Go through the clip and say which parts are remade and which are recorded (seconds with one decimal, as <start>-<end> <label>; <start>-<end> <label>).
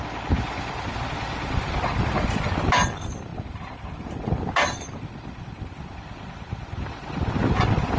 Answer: 0.0-8.0 recorded